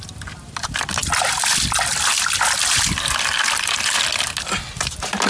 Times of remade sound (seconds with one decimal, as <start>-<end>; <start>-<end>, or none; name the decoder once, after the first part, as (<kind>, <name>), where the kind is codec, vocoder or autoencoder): none